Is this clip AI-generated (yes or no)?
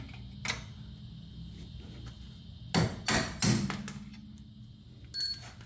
no